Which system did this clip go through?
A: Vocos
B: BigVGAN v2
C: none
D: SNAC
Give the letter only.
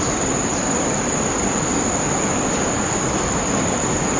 C